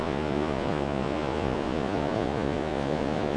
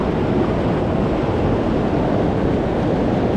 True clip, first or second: second